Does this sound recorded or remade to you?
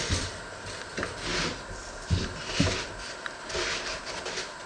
remade